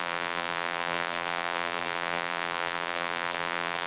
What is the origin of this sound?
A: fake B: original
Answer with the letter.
A